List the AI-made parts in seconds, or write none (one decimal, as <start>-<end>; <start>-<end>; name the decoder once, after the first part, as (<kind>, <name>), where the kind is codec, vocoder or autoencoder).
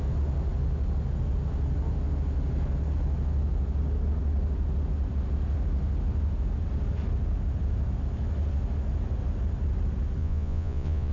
10.2-11.1 (vocoder, Vocos)